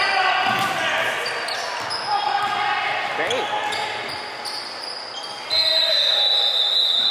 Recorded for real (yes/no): yes